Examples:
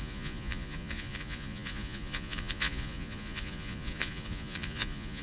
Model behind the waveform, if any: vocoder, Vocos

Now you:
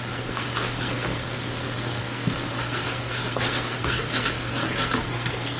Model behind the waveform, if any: codec, SNAC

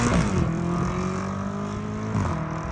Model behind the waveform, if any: none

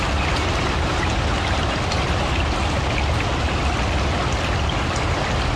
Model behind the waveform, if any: none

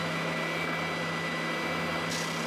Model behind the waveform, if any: none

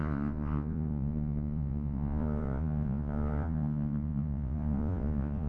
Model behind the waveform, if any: vocoder, Vocos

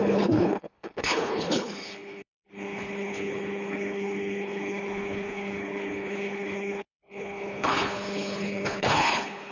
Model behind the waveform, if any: codec, HILCodec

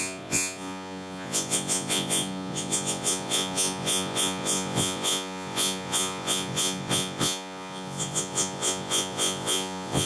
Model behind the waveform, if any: vocoder, Vocos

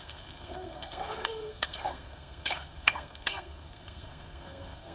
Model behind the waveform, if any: codec, SNAC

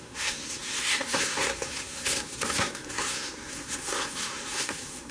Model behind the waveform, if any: codec, SNAC